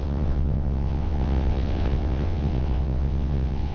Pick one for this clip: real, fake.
fake